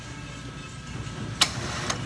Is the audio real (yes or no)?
yes